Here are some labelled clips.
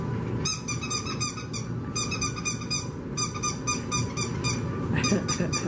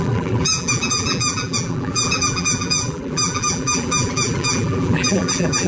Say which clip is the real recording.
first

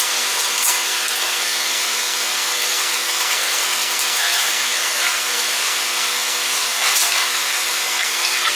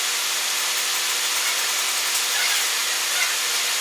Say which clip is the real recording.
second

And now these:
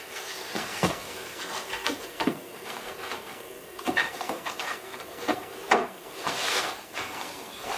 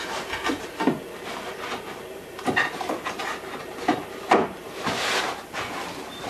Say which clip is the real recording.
second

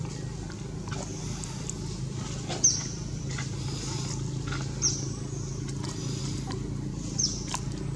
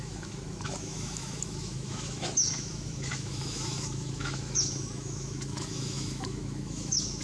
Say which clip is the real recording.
first